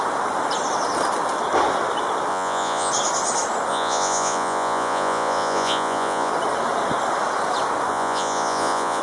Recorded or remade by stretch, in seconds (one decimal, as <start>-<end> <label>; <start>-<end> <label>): 0.0-2.3 recorded; 2.3-2.9 remade; 2.9-3.7 recorded; 3.7-6.3 remade; 6.3-7.9 recorded; 7.9-9.0 remade